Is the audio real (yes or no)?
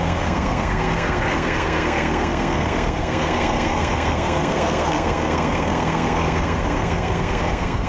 no